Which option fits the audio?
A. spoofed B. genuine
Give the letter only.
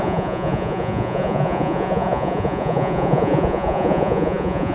A